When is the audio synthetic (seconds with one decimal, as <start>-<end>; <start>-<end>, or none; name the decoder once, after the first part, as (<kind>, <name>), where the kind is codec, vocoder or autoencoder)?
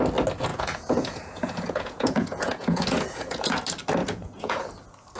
0.5-3.6 (vocoder, Vocos); 4.0-4.6